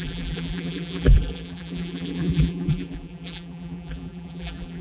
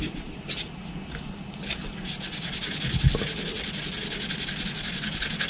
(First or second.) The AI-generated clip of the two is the first